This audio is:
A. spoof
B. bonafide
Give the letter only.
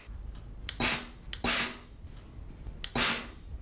B